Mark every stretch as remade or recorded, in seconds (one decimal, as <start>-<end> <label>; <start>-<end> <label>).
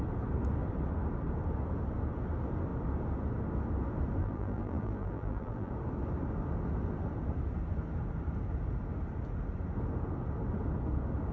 0.0-4.2 recorded; 4.2-5.7 remade; 5.7-11.3 recorded